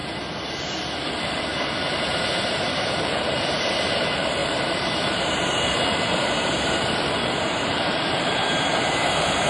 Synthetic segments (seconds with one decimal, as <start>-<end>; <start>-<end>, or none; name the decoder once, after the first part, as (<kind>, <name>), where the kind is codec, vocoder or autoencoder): 1.1-9.5 (vocoder, BigVGAN v2)